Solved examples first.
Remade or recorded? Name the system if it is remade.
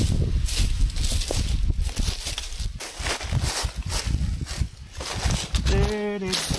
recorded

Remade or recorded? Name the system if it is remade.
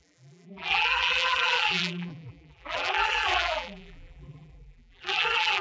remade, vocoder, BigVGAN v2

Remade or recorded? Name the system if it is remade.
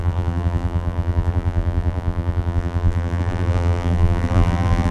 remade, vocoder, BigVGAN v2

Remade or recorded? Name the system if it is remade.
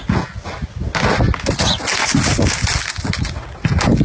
recorded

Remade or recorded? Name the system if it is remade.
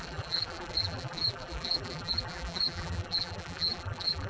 remade, vocoder, BigVGAN v2